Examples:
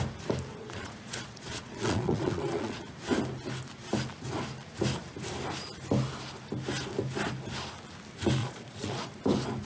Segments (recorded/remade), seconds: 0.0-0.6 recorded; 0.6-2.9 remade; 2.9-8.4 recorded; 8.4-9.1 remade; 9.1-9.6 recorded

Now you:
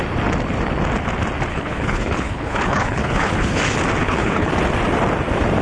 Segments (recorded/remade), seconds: 0.0-1.5 recorded; 1.5-3.6 remade; 3.6-4.0 recorded; 4.0-4.5 remade; 4.5-5.6 recorded

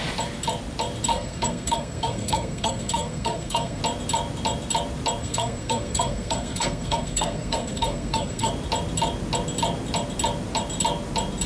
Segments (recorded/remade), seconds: 0.0-1.1 recorded; 1.1-3.8 remade; 3.8-5.2 recorded; 5.2-8.5 remade; 8.5-11.5 recorded

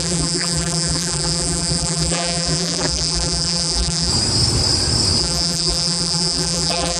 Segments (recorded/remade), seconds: 0.0-4.1 remade; 4.1-5.2 recorded; 5.2-7.0 remade

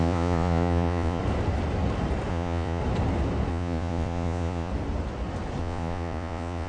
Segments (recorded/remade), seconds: 0.0-1.2 remade; 1.2-2.3 recorded; 2.3-2.8 remade; 2.8-3.5 recorded; 3.5-4.7 remade; 4.7-5.6 recorded; 5.6-6.7 remade

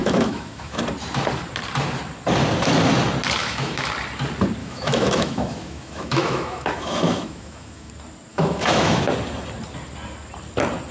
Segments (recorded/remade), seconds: 0.0-0.8 remade; 0.8-3.4 recorded; 3.4-3.9 remade; 3.9-4.6 recorded; 4.6-7.9 remade; 7.9-8.3 recorded; 8.3-9.0 remade; 9.0-10.9 recorded